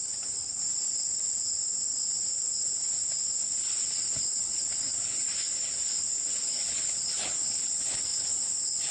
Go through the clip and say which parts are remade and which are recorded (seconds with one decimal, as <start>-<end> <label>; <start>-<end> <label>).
0.0-0.4 remade; 0.4-3.7 recorded; 3.7-8.9 remade